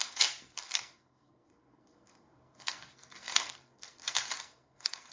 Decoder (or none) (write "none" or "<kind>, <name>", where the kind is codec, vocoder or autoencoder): codec, SNAC